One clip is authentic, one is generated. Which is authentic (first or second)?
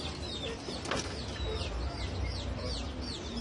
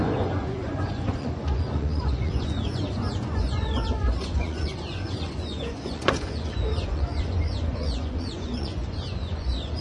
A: first